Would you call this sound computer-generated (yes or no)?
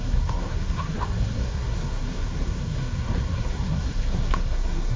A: yes